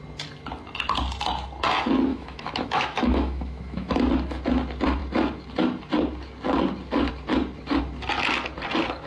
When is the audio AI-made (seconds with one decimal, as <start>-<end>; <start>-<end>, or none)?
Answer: 2.1-3.9